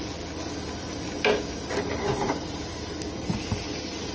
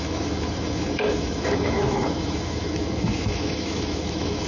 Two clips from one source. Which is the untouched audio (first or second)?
first